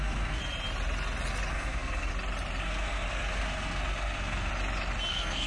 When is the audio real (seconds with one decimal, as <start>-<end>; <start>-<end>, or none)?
0.4-1.5; 2.1-2.6; 4.5-5.1